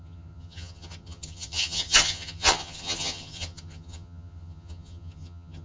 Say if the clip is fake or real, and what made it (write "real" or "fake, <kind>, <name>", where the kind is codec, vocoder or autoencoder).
fake, vocoder, HiFi-GAN